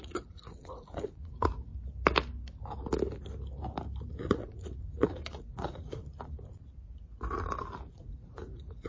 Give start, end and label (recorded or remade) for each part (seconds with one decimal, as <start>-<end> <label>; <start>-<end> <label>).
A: 0.0-1.7 remade; 1.7-4.1 recorded; 4.1-6.0 remade; 6.0-7.9 recorded; 7.9-8.9 remade